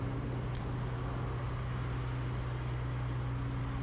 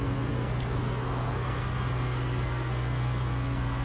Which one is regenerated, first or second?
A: second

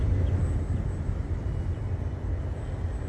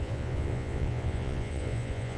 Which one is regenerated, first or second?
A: second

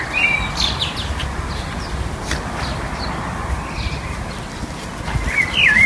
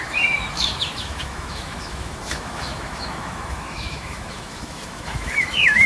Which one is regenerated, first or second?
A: second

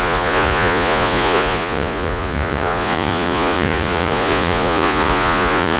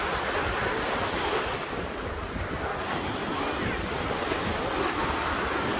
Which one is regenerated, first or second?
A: first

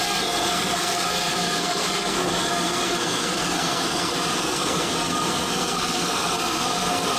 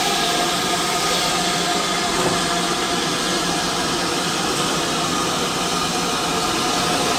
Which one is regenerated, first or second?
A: first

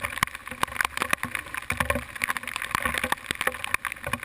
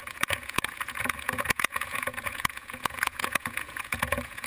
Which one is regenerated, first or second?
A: second